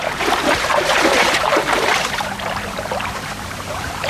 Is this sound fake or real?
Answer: fake